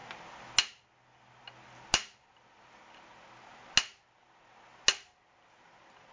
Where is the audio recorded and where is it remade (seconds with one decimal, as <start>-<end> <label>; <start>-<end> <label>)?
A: 0.0-6.1 recorded